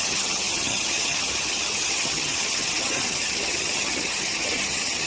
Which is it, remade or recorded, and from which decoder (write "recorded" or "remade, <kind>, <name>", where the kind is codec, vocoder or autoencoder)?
remade, vocoder, HiFi-GAN